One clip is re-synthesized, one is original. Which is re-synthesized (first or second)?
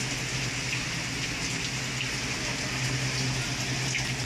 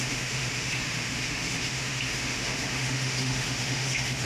second